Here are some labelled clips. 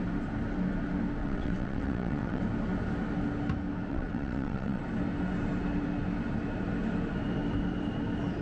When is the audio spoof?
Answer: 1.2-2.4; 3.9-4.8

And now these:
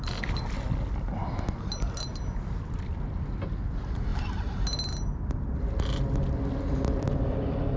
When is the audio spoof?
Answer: none

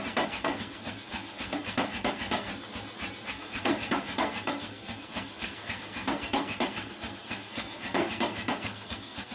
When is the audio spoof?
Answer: 0.0-2.5; 3.3-9.3

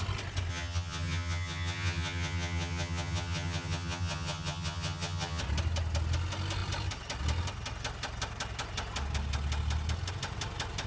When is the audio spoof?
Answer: 0.5-5.4

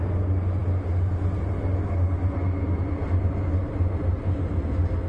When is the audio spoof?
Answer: none

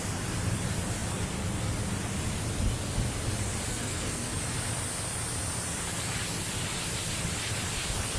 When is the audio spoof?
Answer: 3.7-4.4